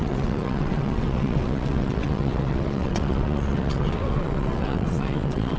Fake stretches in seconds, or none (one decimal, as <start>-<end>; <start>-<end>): 0.0-5.6